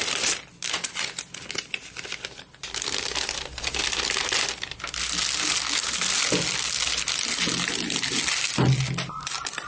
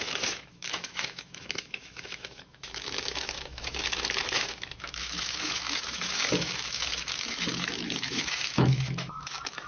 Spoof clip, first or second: second